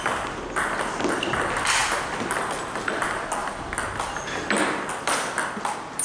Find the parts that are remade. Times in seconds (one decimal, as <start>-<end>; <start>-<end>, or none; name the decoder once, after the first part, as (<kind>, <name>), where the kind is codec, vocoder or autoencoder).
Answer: none